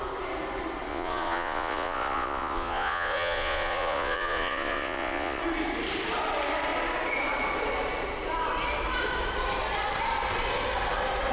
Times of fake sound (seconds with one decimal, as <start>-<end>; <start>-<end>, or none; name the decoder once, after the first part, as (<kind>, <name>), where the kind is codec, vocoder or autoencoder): 0.9-5.4 (vocoder, Vocos)